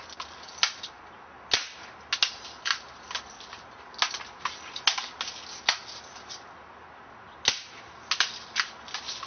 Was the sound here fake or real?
real